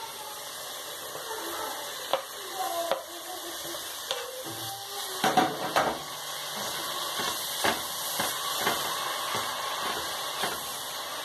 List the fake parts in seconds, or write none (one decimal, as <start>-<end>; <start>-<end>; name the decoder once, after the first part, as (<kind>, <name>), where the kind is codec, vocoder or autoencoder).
none